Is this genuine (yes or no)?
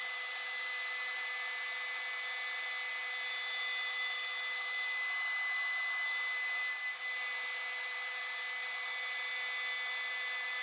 yes